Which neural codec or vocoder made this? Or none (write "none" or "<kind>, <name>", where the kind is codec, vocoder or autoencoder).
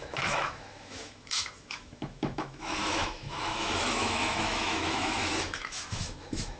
autoencoder, DAC-VAE